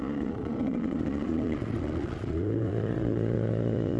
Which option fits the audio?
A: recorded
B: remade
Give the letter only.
B